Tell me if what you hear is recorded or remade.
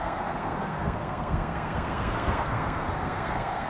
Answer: remade